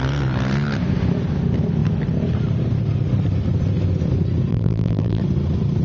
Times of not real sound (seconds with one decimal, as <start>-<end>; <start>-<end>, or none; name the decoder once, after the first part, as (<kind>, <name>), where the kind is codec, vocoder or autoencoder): 4.5-5.2 (vocoder, BigVGAN v2)